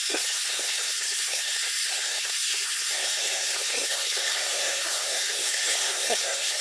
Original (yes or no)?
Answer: no